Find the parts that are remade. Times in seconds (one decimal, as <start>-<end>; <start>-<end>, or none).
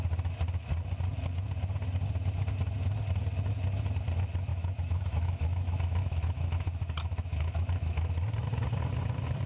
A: 4.5-8.1